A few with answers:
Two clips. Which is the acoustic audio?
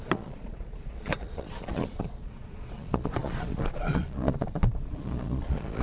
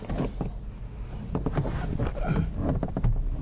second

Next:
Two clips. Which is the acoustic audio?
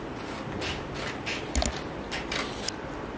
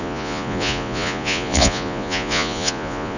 first